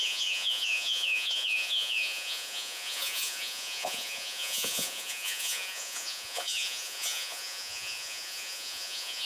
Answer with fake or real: fake